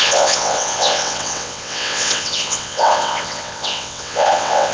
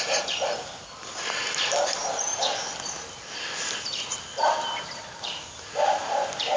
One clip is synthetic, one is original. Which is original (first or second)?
second